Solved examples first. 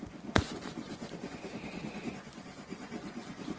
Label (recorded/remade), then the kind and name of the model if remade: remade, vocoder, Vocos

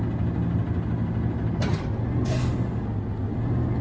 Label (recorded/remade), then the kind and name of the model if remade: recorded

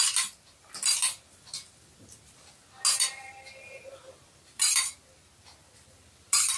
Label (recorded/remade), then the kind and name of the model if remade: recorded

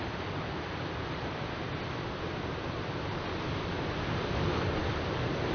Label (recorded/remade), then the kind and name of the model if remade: recorded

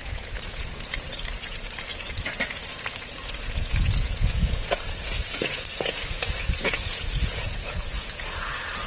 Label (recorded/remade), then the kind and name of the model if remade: remade, vocoder, Vocos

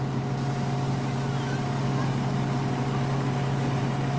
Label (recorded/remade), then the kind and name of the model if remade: recorded